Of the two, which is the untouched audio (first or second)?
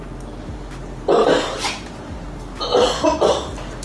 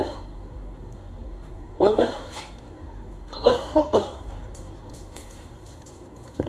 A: first